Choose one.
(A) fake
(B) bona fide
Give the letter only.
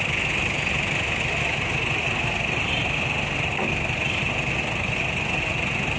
B